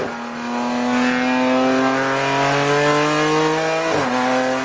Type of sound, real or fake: real